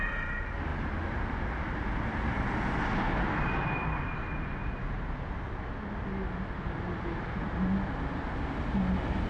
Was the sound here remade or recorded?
recorded